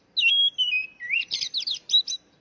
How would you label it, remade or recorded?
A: recorded